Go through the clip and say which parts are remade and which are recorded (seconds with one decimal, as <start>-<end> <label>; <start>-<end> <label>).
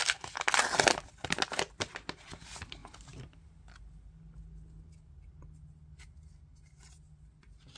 0.0-7.8 recorded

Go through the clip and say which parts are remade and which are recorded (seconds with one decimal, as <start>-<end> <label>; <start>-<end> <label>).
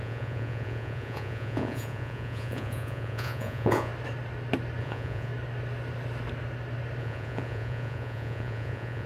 0.0-3.9 remade; 3.9-4.8 recorded; 4.8-5.3 remade; 5.3-7.0 recorded; 7.0-9.1 remade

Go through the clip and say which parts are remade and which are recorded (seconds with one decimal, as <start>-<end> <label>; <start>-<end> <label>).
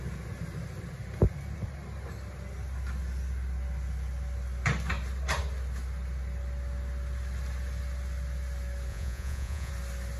0.0-8.9 recorded; 8.9-9.7 remade; 9.7-10.2 recorded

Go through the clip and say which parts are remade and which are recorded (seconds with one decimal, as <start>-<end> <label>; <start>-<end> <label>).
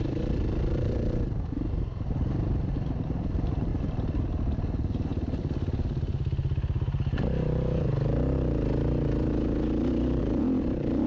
0.0-11.1 recorded